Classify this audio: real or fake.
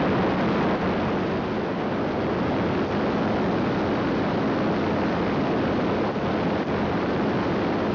real